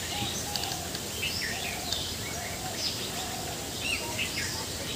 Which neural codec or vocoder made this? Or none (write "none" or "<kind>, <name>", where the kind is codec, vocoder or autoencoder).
none